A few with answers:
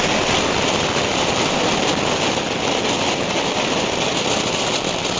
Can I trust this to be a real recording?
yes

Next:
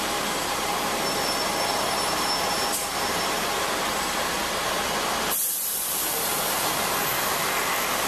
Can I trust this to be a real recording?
yes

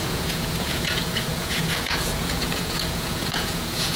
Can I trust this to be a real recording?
no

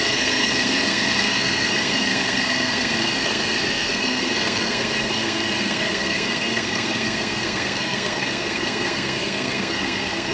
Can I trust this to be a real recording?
no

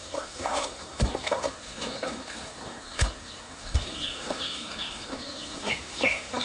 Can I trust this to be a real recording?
no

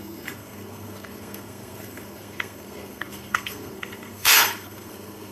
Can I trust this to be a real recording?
no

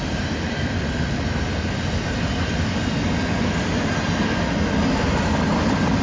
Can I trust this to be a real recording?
yes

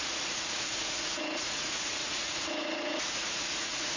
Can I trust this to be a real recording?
no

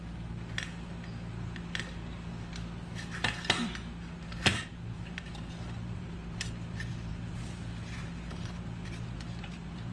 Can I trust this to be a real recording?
yes